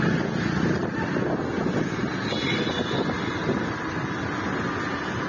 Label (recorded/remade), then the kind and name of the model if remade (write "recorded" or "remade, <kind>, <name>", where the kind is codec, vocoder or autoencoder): recorded